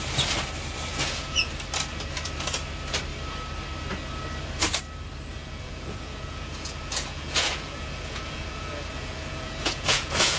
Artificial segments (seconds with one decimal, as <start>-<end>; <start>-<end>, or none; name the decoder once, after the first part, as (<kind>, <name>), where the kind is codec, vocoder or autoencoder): 0.9-1.5 (vocoder, Vocos); 5.3-10.4